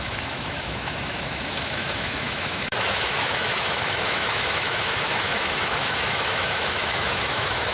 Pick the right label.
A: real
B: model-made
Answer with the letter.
B